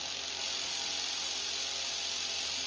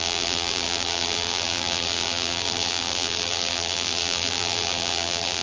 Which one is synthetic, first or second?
second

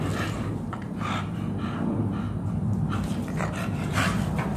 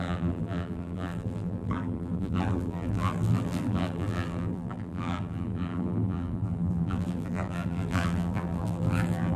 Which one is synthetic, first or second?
second